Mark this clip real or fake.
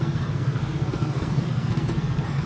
fake